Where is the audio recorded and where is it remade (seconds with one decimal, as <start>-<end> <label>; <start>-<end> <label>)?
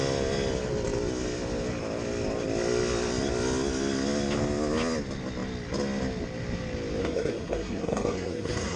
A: 0.0-7.0 recorded; 7.0-8.8 remade